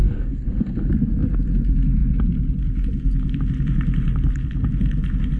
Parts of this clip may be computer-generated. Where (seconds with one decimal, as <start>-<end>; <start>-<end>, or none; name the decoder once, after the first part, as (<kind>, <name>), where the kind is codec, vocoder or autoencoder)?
0.0-0.9 (codec, SNAC)